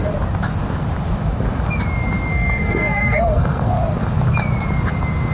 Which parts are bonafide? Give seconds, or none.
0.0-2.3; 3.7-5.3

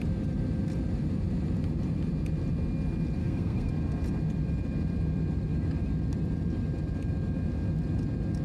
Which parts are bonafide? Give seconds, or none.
0.0-3.2; 3.7-8.4

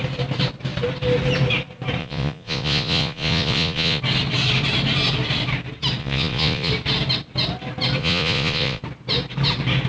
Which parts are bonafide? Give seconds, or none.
0.0-2.0; 4.0-6.0; 6.7-8.0; 8.8-9.9

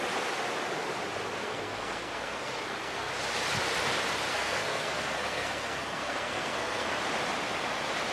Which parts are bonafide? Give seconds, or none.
0.0-1.4; 3.1-4.3; 7.0-8.1

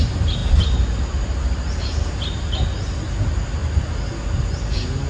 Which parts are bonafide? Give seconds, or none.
0.0-0.4; 2.1-5.1

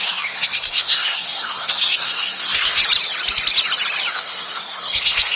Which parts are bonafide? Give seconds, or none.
2.8-4.1